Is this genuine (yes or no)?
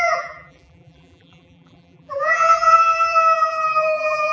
no